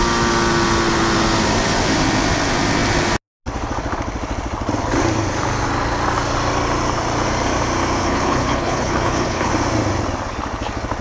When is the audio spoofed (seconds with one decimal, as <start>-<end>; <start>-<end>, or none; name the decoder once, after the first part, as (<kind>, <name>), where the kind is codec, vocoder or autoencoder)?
8.0-9.5 (codec, HILCodec)